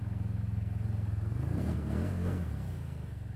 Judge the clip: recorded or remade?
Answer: remade